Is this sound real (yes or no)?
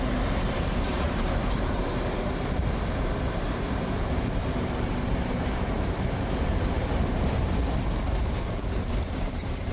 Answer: no